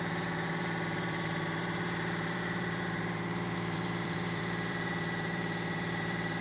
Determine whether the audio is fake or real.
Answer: fake